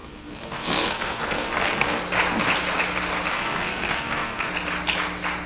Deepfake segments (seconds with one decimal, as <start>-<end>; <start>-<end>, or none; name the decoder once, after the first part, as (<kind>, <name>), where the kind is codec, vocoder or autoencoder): 0.0-2.0 (codec, SNAC); 3.3-4.5